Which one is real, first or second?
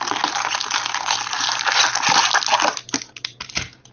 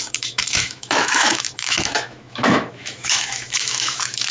first